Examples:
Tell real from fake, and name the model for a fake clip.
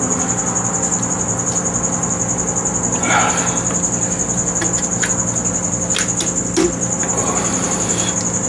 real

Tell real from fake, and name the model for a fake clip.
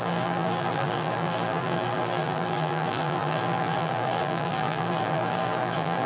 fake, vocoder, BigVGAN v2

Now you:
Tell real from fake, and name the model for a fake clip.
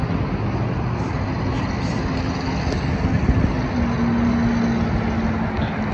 real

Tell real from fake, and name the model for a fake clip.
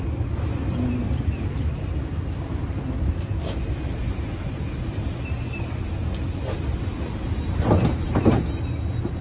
real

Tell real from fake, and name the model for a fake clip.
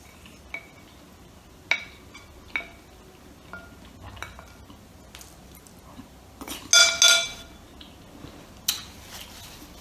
real